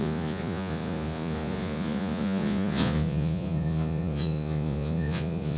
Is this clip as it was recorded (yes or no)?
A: no